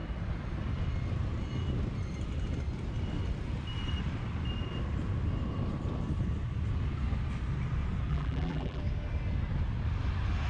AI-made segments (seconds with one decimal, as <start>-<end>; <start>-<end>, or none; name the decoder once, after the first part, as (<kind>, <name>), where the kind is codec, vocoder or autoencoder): 8.1-8.8 (vocoder, BigVGAN v2)

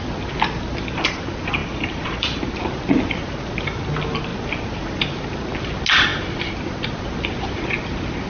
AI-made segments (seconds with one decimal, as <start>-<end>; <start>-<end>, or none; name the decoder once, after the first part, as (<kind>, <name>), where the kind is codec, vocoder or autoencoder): 1.6-2.5 (vocoder, BigVGAN v2)

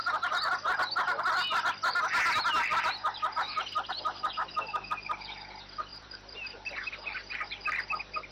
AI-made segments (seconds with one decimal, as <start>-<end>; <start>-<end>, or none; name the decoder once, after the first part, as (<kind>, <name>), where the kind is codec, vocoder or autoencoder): 5.9-6.9 (vocoder, BigVGAN v2)

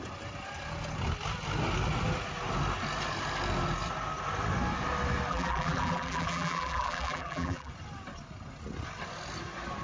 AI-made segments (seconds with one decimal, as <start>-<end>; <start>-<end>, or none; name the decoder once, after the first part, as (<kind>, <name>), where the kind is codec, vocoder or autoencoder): 5.3-7.7 (vocoder, BigVGAN v2)

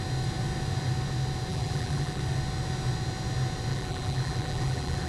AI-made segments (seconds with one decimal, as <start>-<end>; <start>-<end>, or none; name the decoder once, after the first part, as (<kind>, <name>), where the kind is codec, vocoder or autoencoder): 1.5-2.2 (vocoder, BigVGAN v2); 3.7-5.1